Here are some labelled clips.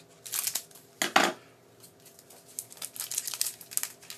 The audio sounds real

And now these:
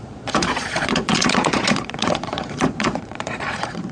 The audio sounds fake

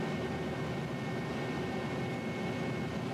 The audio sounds real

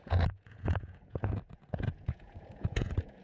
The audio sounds fake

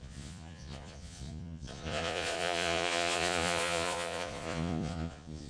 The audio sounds fake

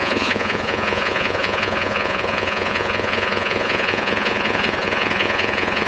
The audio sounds fake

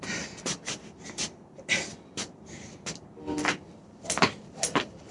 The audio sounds real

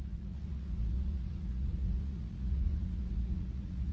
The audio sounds fake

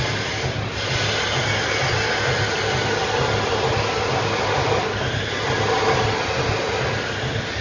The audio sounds real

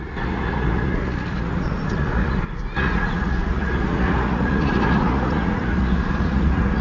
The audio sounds fake